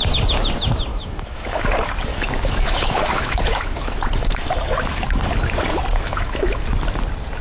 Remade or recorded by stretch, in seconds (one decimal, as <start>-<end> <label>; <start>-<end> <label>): 0.0-0.9 recorded; 0.9-1.6 remade; 1.6-2.1 recorded; 2.1-5.3 remade; 5.3-5.9 recorded; 5.9-6.6 remade; 6.6-7.4 recorded